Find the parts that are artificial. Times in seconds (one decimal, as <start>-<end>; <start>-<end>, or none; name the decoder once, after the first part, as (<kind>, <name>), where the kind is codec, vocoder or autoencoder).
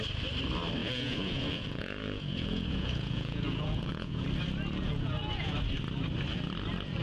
0.8-4.2 (vocoder, Vocos); 4.8-5.5